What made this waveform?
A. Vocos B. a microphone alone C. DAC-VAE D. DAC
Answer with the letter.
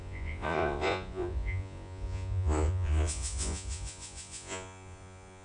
A